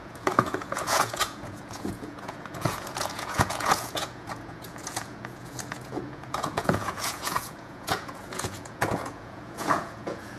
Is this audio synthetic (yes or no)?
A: yes